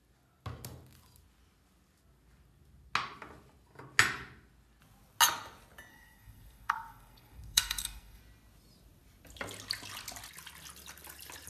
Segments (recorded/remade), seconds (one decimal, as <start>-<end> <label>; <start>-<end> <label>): 0.0-5.9 recorded; 5.9-8.2 remade; 8.2-11.5 recorded

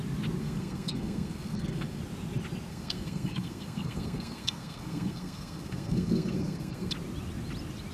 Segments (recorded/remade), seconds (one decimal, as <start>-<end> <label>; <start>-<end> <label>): 0.0-0.4 recorded; 0.4-2.0 remade; 2.0-2.7 recorded; 2.7-6.9 remade; 6.9-7.9 recorded